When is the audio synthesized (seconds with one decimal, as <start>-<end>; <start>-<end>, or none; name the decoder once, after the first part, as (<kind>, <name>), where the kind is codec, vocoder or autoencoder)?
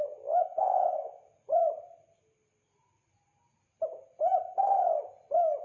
0.4-1.2 (vocoder, Vocos)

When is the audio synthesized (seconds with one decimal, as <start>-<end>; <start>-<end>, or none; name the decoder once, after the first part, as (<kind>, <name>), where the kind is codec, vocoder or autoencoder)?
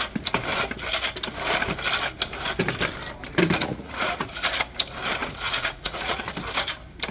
3.6-4.5 (vocoder, Vocos); 5.2-6.2